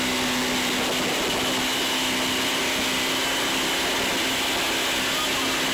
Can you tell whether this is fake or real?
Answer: real